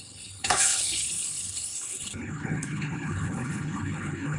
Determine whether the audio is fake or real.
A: fake